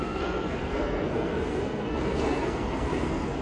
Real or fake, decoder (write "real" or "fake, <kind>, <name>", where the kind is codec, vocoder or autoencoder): fake, codec, SNAC